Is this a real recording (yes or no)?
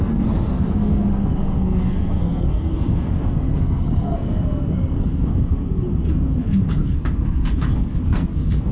no